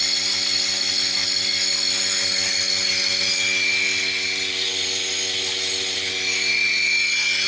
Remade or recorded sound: recorded